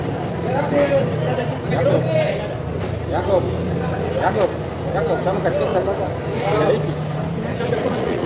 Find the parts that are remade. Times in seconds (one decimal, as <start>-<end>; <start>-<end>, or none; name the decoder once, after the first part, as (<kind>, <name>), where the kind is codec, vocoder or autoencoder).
7.5-8.3 (vocoder, Vocos)